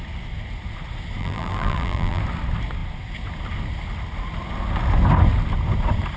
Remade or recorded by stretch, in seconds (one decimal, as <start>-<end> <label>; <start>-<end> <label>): 0.0-1.2 recorded; 1.2-2.2 remade; 2.2-6.2 recorded

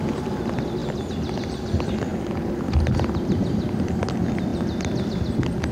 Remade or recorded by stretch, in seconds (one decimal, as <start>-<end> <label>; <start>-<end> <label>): 0.0-0.8 recorded; 0.8-1.7 remade; 1.7-2.1 recorded; 2.1-3.9 remade; 3.9-5.7 recorded